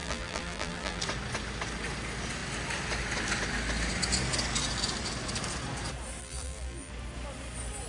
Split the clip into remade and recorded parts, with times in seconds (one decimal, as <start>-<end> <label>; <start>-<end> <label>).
0.0-1.0 remade; 1.0-6.2 recorded; 6.2-6.9 remade; 6.9-7.9 recorded